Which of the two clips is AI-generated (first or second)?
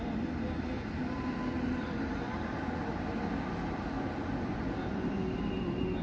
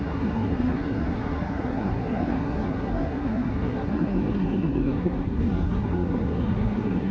second